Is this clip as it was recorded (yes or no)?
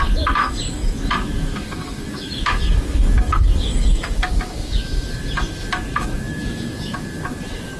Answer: no